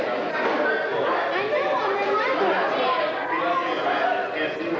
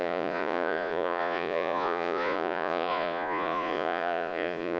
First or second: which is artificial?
second